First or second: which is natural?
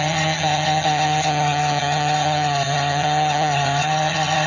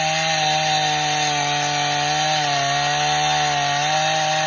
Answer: second